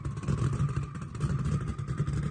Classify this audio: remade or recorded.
recorded